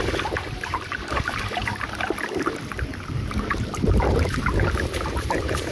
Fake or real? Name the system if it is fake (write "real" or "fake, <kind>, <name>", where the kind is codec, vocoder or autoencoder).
real